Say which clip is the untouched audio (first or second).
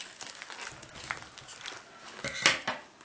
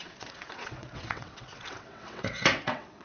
first